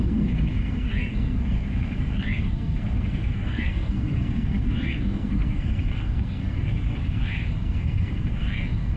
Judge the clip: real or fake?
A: fake